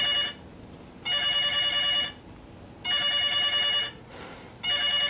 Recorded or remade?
recorded